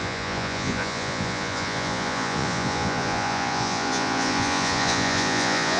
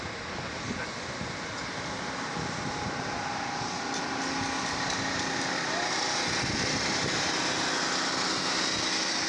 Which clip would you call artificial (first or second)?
first